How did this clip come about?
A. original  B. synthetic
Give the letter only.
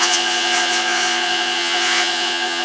B